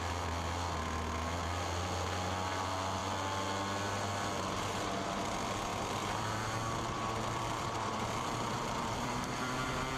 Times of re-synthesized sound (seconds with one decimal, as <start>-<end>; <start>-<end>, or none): 5.7-10.0